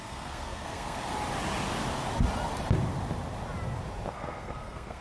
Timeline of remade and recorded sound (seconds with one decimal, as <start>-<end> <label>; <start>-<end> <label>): 0.0-1.1 remade; 1.1-4.1 recorded; 4.1-5.0 remade